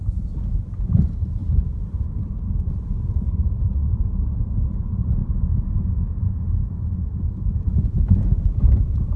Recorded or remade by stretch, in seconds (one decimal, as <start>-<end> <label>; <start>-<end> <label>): 0.0-9.2 recorded